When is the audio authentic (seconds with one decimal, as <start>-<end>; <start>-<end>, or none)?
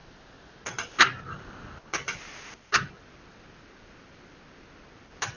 0.0-5.4